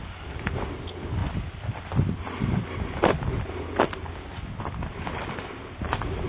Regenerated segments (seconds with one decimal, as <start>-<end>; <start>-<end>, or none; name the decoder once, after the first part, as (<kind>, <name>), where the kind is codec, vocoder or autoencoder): none